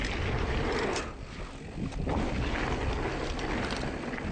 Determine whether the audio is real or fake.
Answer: real